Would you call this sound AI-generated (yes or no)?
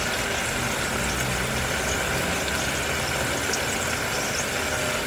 no